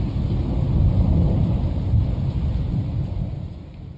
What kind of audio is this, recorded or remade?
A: recorded